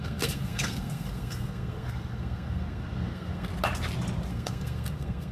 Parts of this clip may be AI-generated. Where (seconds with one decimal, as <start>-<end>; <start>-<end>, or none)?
0.0-3.5; 4.3-5.3